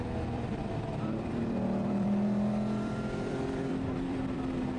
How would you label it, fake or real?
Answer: fake